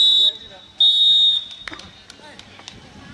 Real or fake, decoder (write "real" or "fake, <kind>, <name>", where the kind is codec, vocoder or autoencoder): real